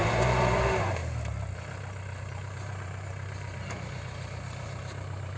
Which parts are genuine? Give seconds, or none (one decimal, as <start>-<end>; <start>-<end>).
1.0-2.2